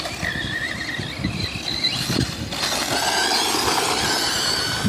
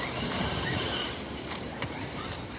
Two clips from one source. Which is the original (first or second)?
first